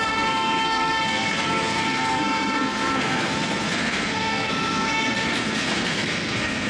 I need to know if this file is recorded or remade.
remade